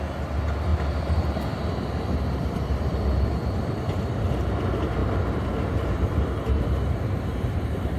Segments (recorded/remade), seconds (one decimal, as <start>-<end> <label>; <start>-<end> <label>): 0.0-0.7 recorded; 0.7-4.3 remade; 4.3-5.0 recorded; 5.0-8.0 remade